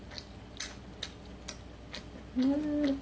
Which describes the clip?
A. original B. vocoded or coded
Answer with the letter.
A